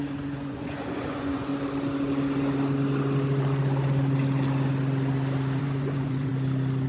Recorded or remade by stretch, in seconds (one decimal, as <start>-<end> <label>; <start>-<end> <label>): 0.0-1.5 remade; 1.5-5.6 recorded; 5.6-6.3 remade; 6.3-6.9 recorded